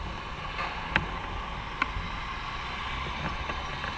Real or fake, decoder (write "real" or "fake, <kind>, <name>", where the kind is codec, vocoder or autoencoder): real